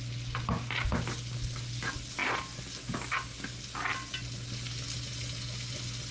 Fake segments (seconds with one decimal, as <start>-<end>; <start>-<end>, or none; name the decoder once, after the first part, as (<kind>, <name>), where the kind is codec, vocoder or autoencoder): none